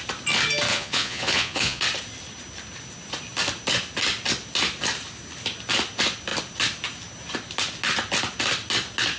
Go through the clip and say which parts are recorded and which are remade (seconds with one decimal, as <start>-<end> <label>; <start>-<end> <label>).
0.0-0.7 recorded; 0.7-1.8 remade; 1.8-9.2 recorded